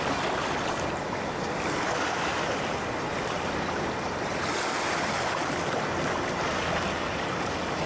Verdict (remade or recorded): recorded